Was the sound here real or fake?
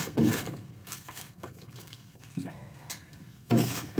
fake